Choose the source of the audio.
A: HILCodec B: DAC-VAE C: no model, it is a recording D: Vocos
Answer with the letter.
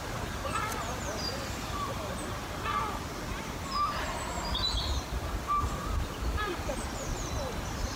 C